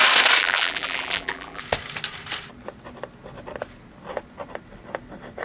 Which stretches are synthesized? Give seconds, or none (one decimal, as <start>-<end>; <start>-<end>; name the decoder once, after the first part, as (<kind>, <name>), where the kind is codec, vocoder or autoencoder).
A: 0.4-1.6 (vocoder, BigVGAN v2)